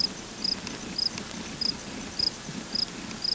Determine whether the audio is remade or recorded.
recorded